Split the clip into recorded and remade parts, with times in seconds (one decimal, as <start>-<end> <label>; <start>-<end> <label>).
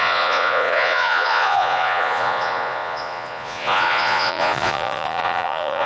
0.0-5.9 remade